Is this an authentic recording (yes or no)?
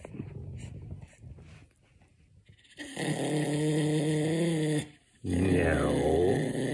yes